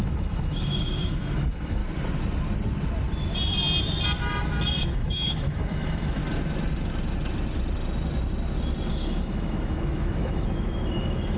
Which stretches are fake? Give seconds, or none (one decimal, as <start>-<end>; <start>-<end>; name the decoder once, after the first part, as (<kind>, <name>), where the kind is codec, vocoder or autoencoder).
0.0-1.8 (autoencoder, DAC-VAE); 4.8-6.2; 8.9-11.4